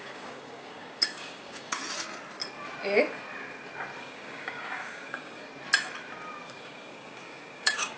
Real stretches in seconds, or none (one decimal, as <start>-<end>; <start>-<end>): 1.8-4.0; 5.5-6.6